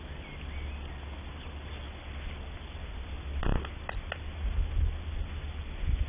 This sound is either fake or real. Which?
real